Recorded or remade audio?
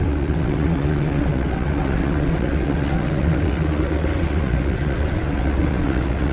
remade